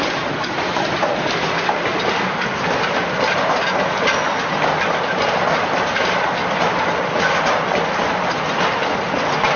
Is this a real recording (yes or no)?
yes